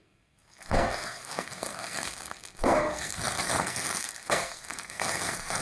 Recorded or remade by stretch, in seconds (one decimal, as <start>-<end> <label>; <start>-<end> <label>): 0.0-5.6 remade